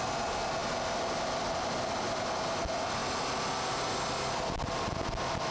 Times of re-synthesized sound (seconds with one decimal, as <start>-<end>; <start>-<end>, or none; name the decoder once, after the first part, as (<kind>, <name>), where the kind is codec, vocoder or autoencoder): none